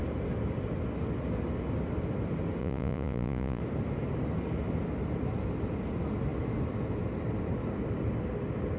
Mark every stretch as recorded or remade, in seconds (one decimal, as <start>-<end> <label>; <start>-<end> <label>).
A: 0.0-2.6 recorded; 2.6-3.6 remade; 3.6-8.8 recorded